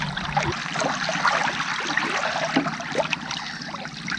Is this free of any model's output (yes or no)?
yes